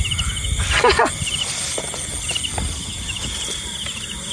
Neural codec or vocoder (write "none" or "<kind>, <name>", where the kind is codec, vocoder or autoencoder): none